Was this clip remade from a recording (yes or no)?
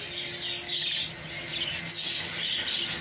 no